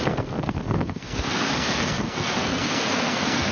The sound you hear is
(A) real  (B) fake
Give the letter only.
B